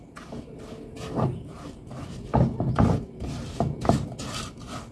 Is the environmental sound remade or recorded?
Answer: recorded